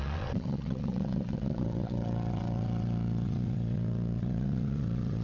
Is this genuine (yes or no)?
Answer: no